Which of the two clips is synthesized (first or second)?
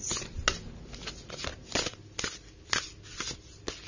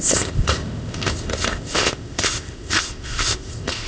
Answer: second